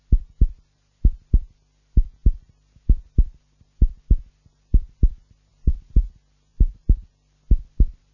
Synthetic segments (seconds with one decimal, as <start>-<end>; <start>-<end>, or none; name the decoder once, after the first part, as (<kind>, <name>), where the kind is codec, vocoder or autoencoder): 5.5-6.1 (vocoder, BigVGAN v2); 6.5-7.1